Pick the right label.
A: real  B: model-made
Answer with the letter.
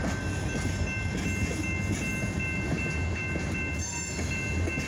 A